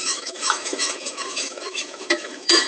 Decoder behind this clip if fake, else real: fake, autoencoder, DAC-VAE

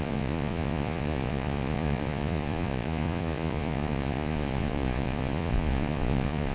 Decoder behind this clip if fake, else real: fake, vocoder, Vocos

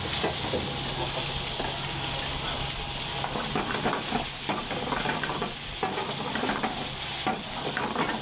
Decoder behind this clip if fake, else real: real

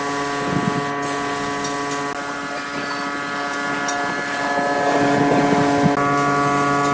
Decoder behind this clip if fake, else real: real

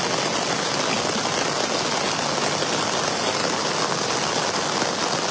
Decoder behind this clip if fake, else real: real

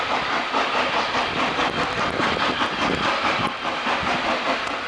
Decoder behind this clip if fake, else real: fake, vocoder, BigVGAN v2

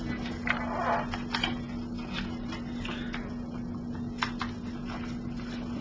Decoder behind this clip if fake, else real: real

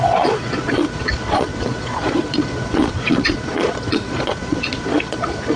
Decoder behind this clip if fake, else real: fake, vocoder, Vocos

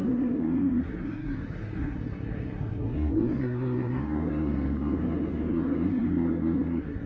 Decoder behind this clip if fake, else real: fake, codec, SNAC